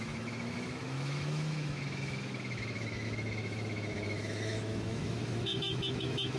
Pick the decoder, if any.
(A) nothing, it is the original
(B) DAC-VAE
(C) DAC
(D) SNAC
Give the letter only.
B